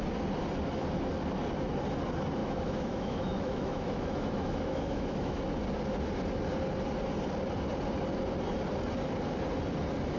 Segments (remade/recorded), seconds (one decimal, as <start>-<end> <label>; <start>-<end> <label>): 0.0-2.4 recorded; 2.4-5.4 remade; 5.4-10.2 recorded